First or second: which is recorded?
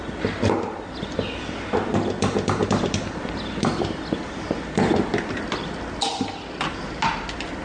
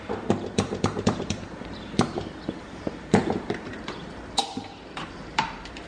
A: first